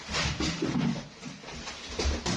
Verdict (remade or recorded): recorded